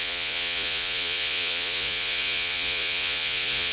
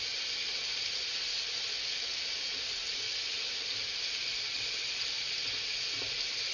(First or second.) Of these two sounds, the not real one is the first